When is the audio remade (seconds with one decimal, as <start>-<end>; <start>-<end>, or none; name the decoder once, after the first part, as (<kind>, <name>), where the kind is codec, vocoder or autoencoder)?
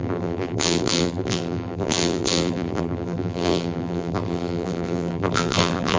0.0-6.0 (vocoder, BigVGAN v2)